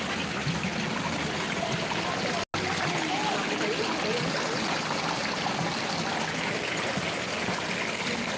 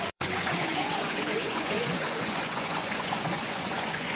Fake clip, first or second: second